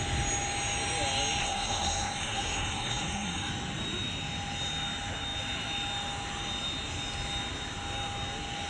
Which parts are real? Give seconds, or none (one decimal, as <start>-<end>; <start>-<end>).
0.0-1.4; 3.5-8.7